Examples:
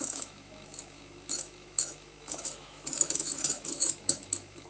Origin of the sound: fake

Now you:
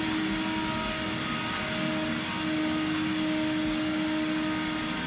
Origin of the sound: real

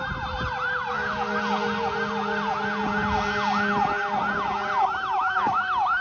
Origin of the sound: real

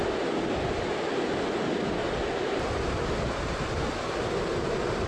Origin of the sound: real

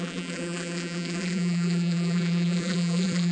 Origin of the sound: fake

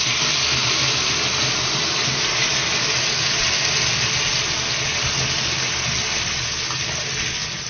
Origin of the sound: real